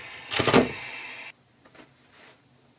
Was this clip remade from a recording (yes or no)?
no